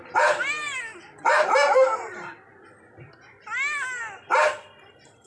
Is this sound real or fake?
real